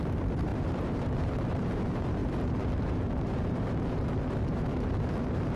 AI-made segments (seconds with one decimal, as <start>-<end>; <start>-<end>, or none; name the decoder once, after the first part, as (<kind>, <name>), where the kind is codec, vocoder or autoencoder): 0.0-5.6 (vocoder, BigVGAN v2)